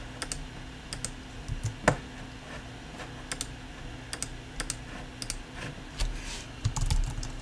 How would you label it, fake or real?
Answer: real